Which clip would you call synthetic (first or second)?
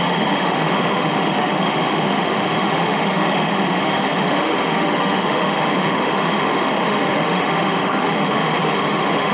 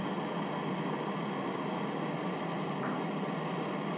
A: first